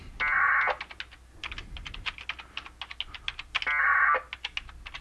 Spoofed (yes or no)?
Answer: no